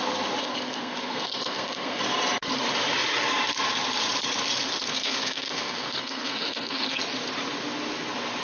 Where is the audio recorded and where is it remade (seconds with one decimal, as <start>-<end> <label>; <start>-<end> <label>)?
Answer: 0.0-0.4 recorded; 0.4-2.0 remade; 2.0-4.9 recorded; 4.9-7.0 remade; 7.0-8.4 recorded